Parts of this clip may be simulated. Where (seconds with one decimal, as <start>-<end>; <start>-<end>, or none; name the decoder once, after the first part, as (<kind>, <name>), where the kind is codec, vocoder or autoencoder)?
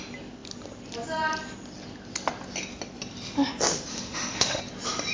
3.9-4.6 (autoencoder, DAC-VAE)